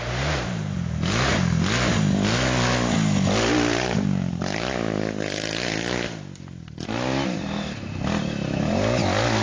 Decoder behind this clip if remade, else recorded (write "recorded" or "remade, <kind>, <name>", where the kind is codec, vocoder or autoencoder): recorded